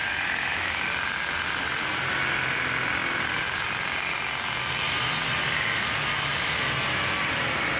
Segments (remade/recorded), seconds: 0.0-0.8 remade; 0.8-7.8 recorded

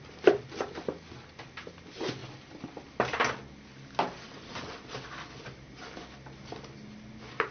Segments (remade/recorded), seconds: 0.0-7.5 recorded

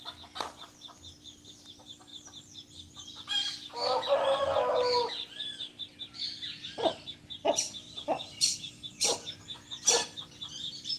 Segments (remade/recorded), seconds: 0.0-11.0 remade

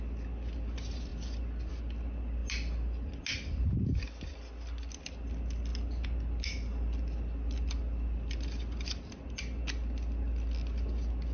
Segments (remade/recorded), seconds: 0.0-11.3 recorded

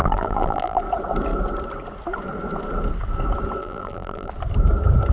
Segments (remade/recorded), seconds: 0.0-0.8 remade; 0.8-3.6 recorded; 3.6-4.3 remade; 4.3-5.1 recorded

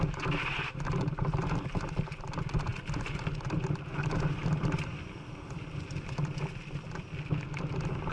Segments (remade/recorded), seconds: 0.0-8.1 recorded